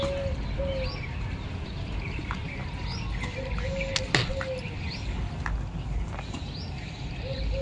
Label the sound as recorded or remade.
recorded